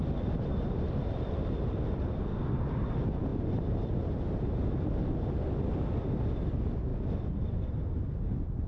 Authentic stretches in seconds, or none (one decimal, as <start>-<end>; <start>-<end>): 0.0-2.1; 2.6-8.7